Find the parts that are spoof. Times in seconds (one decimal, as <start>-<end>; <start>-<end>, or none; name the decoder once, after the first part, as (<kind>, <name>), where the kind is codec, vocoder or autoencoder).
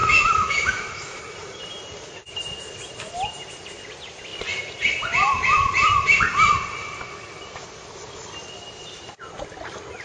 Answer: 0.0-1.2 (autoencoder, DAC-VAE)